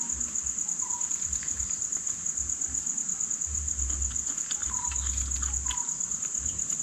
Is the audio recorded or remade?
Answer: recorded